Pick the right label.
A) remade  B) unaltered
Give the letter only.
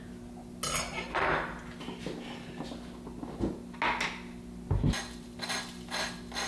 B